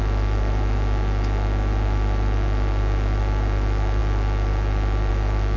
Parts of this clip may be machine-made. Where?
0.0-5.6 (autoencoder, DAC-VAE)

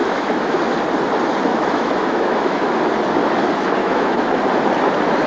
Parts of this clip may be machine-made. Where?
0.0-0.6 (autoencoder, DAC-VAE); 1.5-2.8; 3.8-4.4

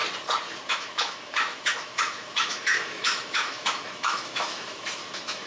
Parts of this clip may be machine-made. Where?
0.7-5.5 (autoencoder, DAC-VAE)

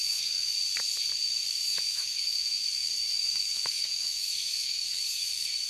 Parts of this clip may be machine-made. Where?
0.0-0.5 (autoencoder, DAC-VAE); 1.5-5.7

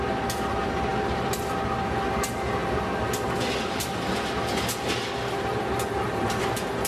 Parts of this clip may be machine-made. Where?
none

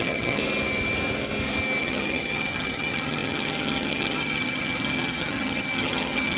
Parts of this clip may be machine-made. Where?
0.0-0.4 (vocoder, HiFi-GAN); 1.8-6.4